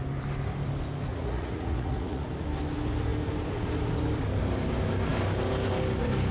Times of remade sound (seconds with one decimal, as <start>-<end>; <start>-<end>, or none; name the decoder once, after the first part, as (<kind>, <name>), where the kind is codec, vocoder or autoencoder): 1.1-2.3 (vocoder, Vocos)